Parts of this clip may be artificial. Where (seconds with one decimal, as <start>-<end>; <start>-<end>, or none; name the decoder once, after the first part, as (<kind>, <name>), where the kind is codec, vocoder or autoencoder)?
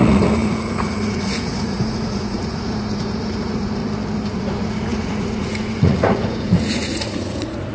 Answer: 0.0-3.8 (vocoder, Vocos); 4.3-7.7